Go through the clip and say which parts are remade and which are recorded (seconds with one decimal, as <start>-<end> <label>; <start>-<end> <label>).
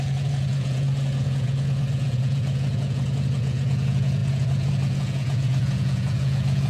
0.0-6.7 remade